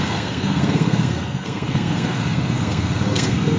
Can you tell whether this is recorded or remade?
remade